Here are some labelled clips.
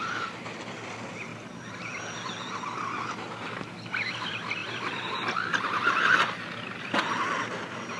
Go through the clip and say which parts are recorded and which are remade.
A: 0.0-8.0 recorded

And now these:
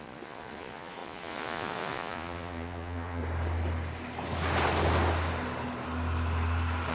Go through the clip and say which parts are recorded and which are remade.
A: 0.0-3.2 remade; 3.2-6.9 recorded

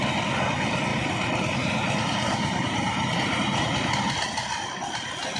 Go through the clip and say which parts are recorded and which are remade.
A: 0.0-0.9 recorded; 0.9-4.1 remade; 4.1-5.4 recorded

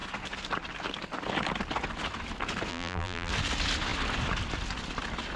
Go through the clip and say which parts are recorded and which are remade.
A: 0.0-2.7 recorded; 2.7-3.3 remade; 3.3-5.4 recorded

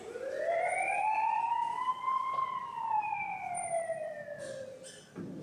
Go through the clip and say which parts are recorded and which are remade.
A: 0.0-1.4 recorded; 1.4-1.9 remade; 1.9-5.4 recorded